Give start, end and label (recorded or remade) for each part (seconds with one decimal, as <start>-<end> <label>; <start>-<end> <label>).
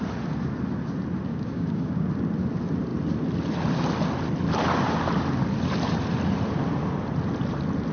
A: 0.0-1.3 recorded; 1.3-2.1 remade; 2.1-7.9 recorded